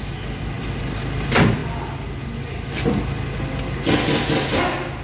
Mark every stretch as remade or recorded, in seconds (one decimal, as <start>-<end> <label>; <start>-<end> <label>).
0.0-5.0 recorded